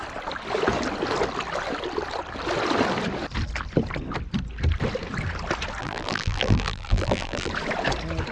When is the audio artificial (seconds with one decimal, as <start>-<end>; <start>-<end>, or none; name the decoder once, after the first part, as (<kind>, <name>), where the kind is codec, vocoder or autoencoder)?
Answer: 5.8-7.5 (vocoder, BigVGAN v2)